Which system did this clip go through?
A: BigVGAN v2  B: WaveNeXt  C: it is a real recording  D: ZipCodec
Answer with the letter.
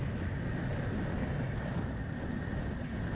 A